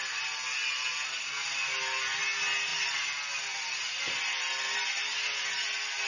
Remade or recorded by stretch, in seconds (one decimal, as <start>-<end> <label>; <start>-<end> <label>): 0.0-6.1 recorded